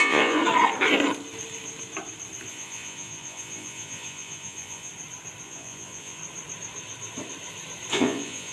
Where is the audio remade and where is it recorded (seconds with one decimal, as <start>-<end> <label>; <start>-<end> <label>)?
0.0-0.4 remade; 0.4-2.5 recorded; 2.5-4.9 remade; 4.9-5.4 recorded; 5.4-6.2 remade; 6.2-7.9 recorded; 7.9-8.5 remade